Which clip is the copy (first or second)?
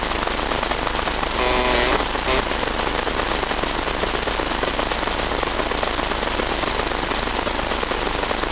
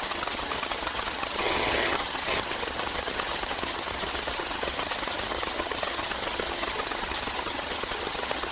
second